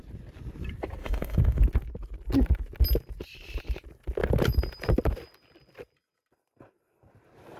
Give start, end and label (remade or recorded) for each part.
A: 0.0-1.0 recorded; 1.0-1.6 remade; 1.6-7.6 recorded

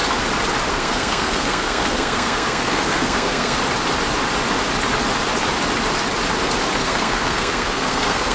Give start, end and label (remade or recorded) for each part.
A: 0.0-0.7 recorded; 0.7-3.6 remade; 3.6-6.8 recorded; 6.8-8.3 remade